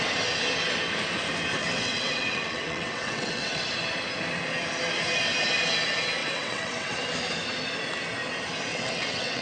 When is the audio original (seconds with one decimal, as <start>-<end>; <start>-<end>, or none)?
0.0-1.6; 3.6-6.2; 6.9-8.7